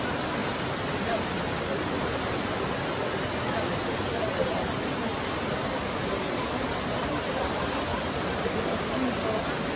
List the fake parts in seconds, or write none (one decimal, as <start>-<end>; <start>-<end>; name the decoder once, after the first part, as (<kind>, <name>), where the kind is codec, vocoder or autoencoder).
0.4-2.3 (vocoder, BigVGAN v2); 7.9-8.8